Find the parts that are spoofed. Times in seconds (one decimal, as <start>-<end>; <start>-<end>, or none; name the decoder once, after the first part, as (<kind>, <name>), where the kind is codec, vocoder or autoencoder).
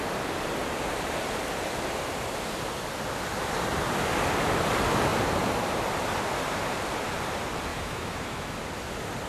7.7-8.6 (autoencoder, DAC-VAE)